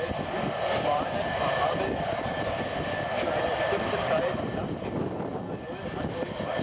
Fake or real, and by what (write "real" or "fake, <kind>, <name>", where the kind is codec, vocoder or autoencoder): real